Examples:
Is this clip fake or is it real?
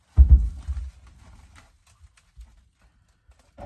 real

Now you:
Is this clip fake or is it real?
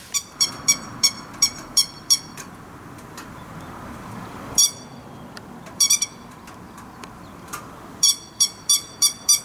fake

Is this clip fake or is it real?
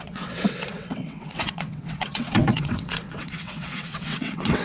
fake